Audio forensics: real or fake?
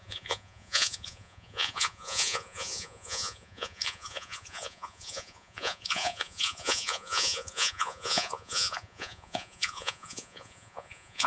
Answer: fake